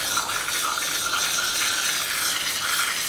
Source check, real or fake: real